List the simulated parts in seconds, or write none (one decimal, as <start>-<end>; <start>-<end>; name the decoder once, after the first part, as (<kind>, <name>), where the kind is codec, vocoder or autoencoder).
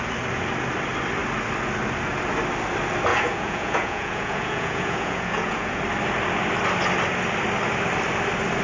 3.1-5.8 (vocoder, Vocos)